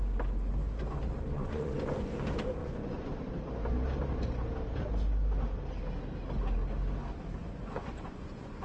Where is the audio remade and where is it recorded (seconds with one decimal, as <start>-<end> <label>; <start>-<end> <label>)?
0.0-1.3 recorded; 1.3-2.2 remade; 2.2-2.6 recorded; 2.6-3.1 remade; 3.1-7.4 recorded; 7.4-8.6 remade